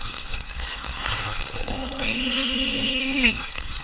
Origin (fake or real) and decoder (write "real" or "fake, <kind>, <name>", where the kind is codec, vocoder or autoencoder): fake, codec, SNAC